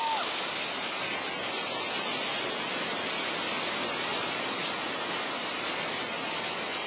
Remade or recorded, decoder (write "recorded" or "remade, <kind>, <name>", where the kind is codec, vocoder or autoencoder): recorded